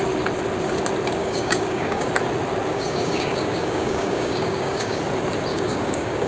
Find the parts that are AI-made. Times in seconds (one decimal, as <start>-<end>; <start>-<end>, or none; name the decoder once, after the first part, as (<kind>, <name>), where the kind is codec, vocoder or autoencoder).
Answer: 1.2-2.1 (codec, DAC); 2.7-5.0; 5.5-6.3